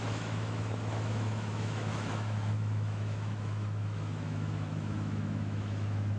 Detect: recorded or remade remade